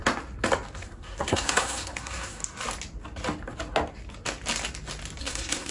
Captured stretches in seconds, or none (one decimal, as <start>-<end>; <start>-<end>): 0.0-0.8; 2.4-5.2